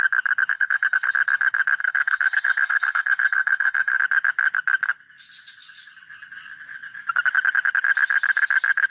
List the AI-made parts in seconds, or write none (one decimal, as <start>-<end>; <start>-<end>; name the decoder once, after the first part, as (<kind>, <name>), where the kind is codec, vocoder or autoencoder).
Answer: 0.5-1.1 (codec, SNAC); 1.8-4.0

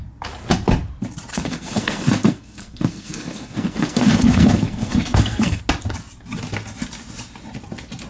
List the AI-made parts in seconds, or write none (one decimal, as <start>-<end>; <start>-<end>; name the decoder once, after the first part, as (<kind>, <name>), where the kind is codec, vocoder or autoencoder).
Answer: 1.3-5.6 (codec, SNAC)

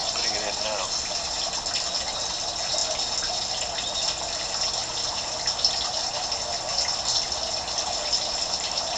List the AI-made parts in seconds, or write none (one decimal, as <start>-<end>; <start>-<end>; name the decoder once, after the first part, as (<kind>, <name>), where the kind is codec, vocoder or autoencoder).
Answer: none